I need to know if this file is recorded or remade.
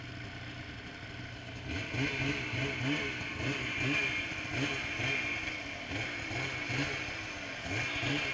recorded